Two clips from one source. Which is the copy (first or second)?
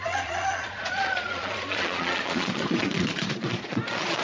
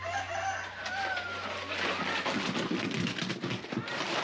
first